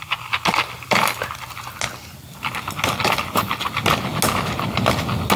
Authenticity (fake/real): real